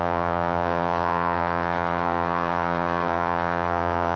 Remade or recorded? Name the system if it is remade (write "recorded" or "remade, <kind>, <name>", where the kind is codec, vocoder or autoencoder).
remade, vocoder, HiFi-GAN